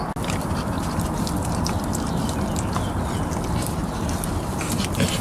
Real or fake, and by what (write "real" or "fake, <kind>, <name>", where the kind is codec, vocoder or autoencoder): real